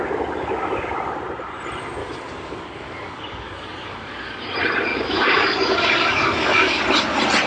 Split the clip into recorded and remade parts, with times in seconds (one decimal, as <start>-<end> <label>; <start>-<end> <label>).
0.0-2.0 recorded; 2.0-4.4 remade; 4.4-4.9 recorded; 4.9-6.8 remade; 6.8-7.5 recorded